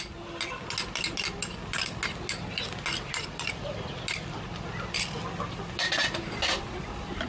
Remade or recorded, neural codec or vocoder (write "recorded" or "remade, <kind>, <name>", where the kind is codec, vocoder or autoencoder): recorded